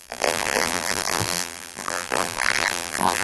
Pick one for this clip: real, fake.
fake